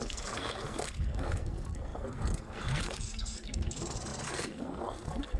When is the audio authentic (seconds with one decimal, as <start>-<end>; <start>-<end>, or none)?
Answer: none